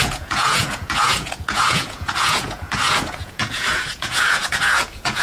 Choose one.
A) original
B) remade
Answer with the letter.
B